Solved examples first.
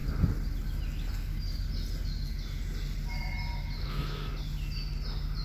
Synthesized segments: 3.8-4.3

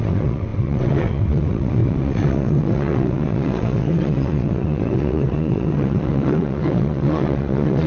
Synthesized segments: 0.0-7.9

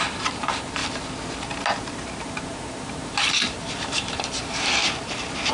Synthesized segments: 0.0-0.8; 2.0-5.5

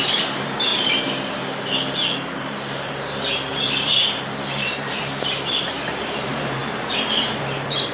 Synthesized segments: 0.0-0.7; 2.4-7.9

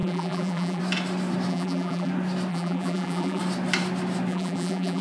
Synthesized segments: 0.0-0.8; 1.5-2.1; 2.5-3.4; 4.3-5.0

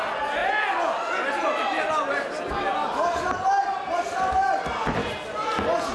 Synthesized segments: none